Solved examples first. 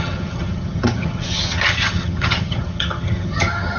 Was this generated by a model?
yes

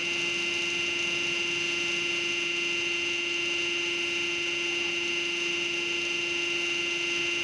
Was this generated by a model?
no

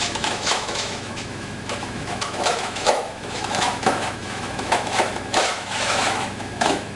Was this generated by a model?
yes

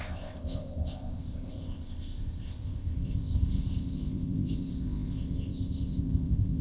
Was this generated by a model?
yes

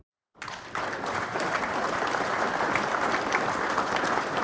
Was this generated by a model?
no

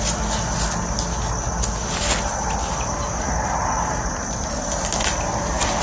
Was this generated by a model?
no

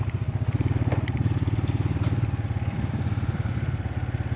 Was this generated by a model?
no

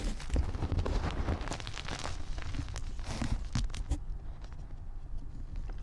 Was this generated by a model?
no